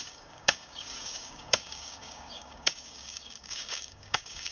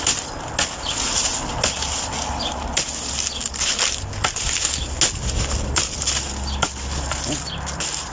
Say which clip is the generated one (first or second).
first